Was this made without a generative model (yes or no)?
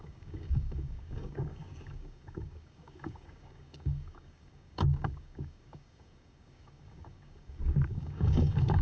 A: no